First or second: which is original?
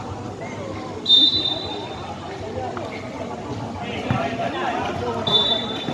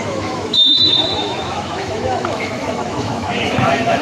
first